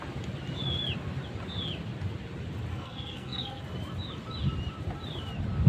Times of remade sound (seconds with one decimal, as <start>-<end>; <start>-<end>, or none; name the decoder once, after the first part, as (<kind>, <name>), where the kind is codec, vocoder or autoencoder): 2.7-3.6 (codec, SNAC)